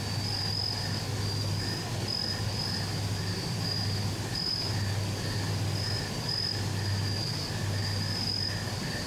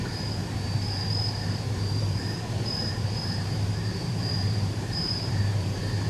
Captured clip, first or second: first